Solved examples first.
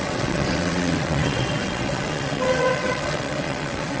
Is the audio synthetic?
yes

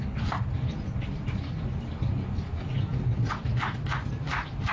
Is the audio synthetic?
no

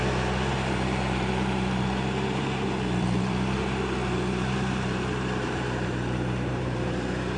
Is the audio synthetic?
yes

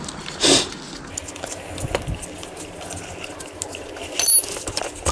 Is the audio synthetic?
no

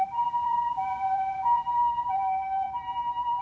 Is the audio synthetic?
yes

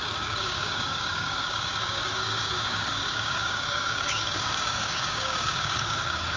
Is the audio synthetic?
yes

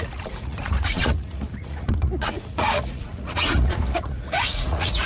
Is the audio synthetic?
yes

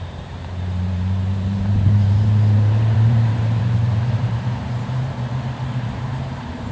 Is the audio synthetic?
yes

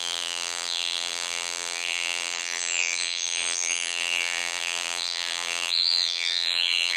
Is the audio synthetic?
yes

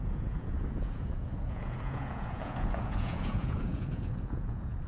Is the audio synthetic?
yes